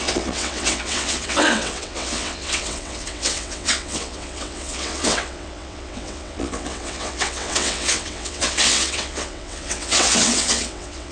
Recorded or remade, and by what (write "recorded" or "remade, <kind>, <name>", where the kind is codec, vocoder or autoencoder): remade, vocoder, WaveNeXt